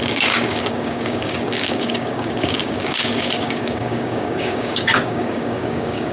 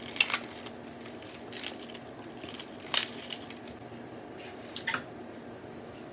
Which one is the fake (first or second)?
first